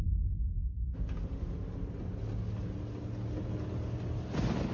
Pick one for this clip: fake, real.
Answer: real